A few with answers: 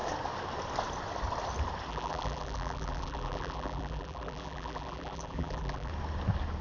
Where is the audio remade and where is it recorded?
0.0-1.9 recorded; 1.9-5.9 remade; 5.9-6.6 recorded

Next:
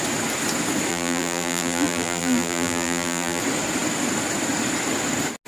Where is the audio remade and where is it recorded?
0.0-0.9 recorded; 0.9-3.4 remade; 3.4-5.5 recorded

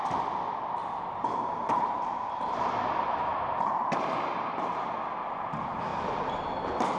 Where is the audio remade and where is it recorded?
0.0-0.8 recorded; 0.8-4.9 remade; 4.9-7.0 recorded

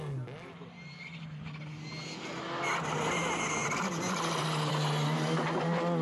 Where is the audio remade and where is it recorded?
0.0-3.6 recorded; 3.6-4.7 remade; 4.7-6.0 recorded

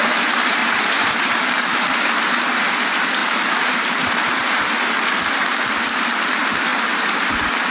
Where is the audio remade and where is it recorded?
0.0-0.6 recorded; 0.6-1.3 remade; 1.3-3.2 recorded; 3.2-4.7 remade; 4.7-6.7 recorded; 6.7-7.7 remade

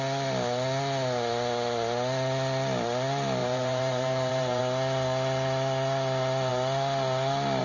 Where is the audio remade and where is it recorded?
0.0-3.4 recorded; 3.4-4.6 remade; 4.6-7.6 recorded

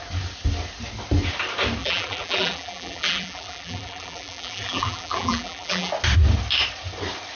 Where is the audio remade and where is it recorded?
0.0-1.8 recorded; 1.8-5.9 remade; 5.9-7.4 recorded